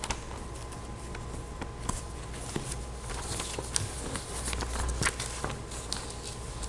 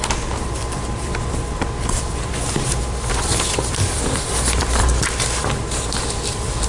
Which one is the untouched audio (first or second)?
first